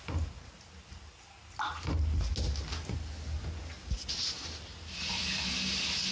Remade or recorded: recorded